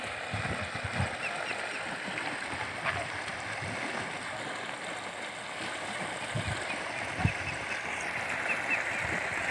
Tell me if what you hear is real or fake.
real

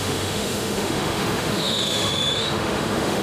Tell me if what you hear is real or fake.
fake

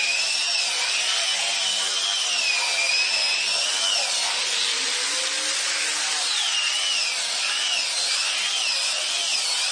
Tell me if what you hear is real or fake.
real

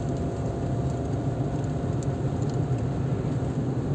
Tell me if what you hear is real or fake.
real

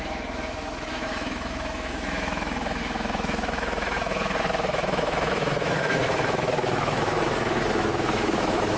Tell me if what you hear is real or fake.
fake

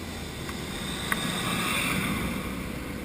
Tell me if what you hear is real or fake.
real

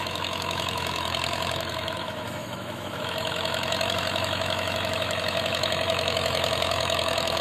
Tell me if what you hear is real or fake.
fake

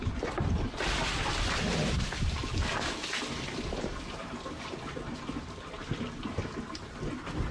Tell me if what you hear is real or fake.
real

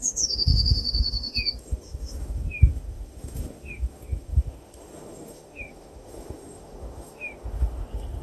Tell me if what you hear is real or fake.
fake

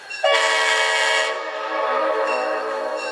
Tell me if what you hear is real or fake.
fake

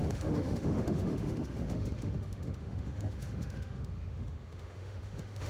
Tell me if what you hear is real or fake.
fake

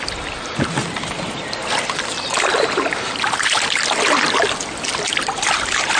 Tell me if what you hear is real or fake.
real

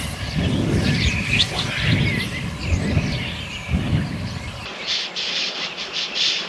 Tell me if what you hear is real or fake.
real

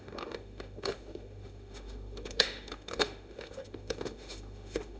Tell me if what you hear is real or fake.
fake